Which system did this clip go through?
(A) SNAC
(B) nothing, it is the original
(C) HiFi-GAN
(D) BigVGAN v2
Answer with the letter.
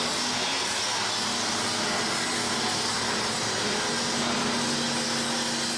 B